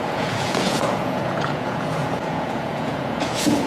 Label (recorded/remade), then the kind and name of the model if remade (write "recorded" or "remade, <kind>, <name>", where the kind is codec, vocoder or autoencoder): remade, vocoder, Vocos